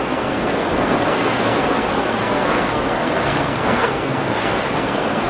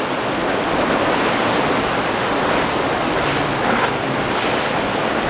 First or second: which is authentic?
second